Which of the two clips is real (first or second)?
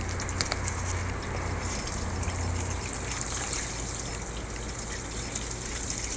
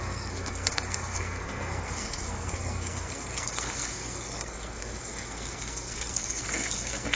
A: first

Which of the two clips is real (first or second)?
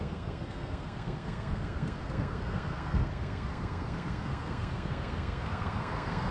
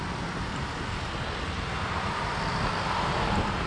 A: second